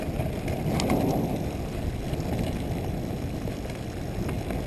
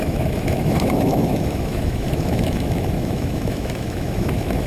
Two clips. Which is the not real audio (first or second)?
second